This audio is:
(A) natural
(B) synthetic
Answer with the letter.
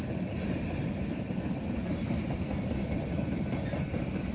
A